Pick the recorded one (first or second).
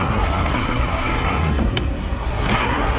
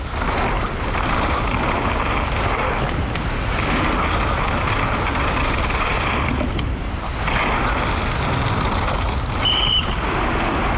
second